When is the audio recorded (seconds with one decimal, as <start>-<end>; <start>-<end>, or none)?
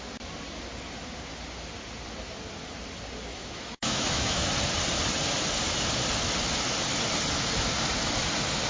0.0-3.3; 4.5-8.7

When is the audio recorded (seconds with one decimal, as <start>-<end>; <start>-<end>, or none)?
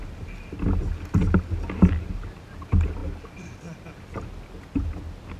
0.0-5.4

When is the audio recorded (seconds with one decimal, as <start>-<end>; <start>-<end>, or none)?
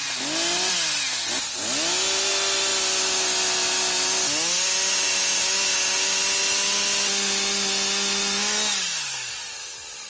0.0-10.1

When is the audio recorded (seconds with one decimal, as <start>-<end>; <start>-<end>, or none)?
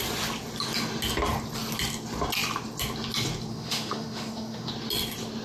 0.0-3.5; 4.7-5.4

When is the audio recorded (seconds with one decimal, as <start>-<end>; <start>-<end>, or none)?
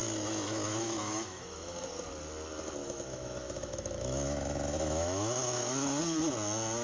1.8-2.8; 6.0-6.8